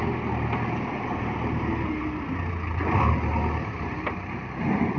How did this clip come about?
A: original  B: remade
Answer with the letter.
A